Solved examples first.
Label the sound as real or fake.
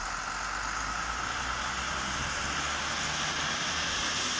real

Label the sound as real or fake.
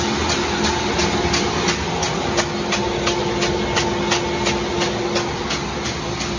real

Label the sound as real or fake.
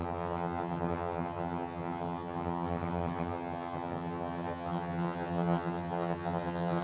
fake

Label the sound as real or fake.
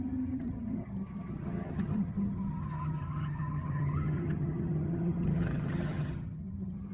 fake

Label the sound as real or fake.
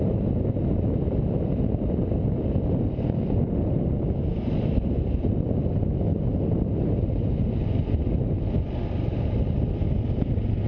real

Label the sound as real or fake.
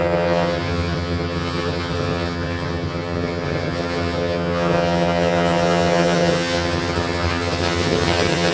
fake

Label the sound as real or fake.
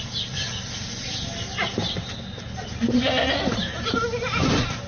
real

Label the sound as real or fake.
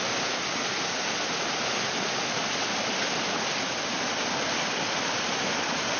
real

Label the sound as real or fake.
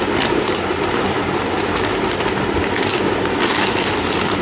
real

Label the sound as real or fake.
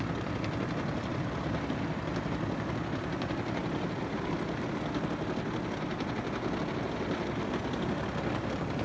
real